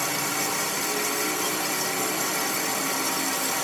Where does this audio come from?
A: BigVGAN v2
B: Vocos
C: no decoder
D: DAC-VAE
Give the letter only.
C